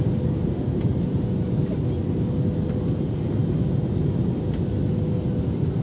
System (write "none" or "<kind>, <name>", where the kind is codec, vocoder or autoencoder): none